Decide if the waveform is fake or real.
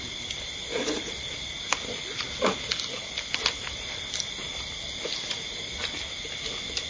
real